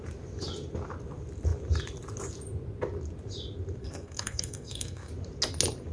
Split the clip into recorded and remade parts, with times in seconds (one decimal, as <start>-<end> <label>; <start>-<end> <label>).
0.0-3.8 recorded; 3.8-5.1 remade; 5.1-5.9 recorded